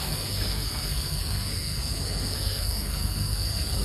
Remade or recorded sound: remade